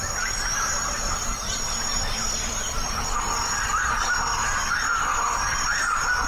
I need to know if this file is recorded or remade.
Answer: remade